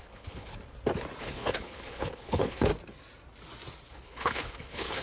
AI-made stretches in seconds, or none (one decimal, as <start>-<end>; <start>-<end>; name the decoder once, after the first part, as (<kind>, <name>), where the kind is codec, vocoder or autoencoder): 0.0-0.5 (codec, HILCodec); 1.2-2.7; 3.9-5.0